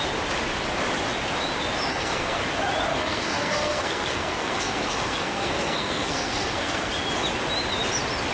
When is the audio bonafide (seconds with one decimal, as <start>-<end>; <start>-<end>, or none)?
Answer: 0.0-1.9; 2.4-2.9; 6.9-8.3